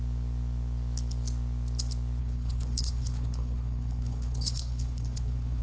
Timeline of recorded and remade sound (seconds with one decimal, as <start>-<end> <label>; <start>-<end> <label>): 0.0-2.2 recorded; 2.2-5.6 remade